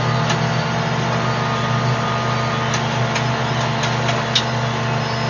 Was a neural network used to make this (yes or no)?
no